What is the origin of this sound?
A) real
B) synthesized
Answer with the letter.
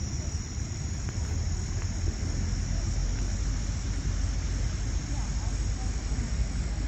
A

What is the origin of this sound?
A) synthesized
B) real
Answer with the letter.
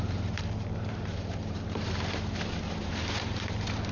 A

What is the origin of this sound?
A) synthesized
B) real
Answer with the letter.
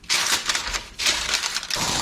B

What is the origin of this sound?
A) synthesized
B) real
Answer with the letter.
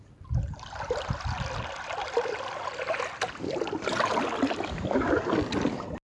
B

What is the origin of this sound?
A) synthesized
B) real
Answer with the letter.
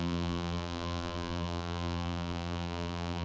A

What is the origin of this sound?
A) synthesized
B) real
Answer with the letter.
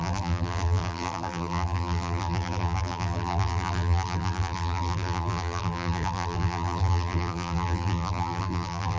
A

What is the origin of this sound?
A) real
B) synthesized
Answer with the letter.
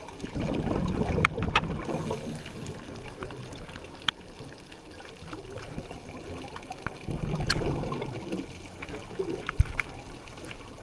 A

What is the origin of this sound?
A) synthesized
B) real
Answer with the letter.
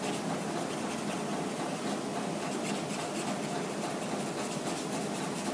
B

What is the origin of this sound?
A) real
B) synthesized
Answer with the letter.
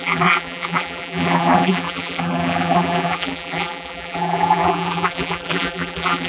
B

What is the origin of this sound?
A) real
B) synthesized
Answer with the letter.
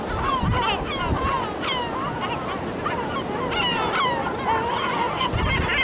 A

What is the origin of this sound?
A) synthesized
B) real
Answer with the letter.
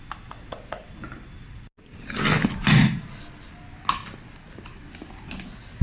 B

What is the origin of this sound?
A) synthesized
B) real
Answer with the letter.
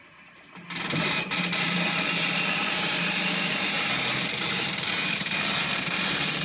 A